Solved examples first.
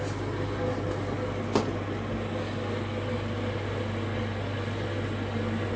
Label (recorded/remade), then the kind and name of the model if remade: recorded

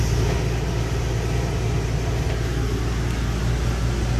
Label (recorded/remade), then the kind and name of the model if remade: recorded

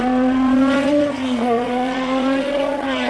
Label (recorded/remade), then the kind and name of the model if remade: remade, vocoder, Vocos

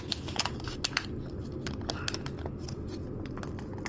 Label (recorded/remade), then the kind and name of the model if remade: recorded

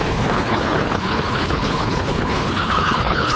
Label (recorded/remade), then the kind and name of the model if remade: remade, codec, HILCodec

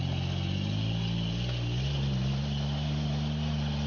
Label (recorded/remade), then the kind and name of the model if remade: recorded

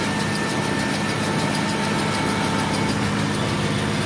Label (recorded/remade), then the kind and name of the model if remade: recorded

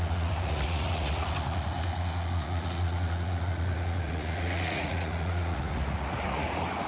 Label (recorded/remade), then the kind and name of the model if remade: remade, vocoder, Vocos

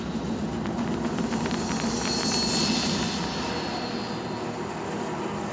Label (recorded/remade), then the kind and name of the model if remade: recorded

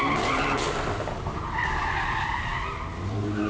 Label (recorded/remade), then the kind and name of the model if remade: recorded